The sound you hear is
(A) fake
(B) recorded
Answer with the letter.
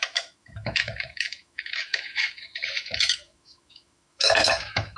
A